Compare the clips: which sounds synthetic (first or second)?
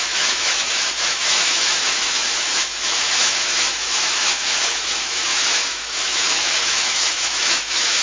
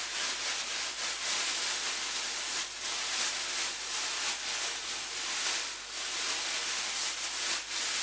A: first